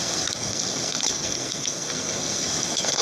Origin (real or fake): fake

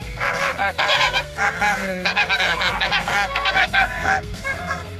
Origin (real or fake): fake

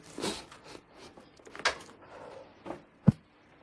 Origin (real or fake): real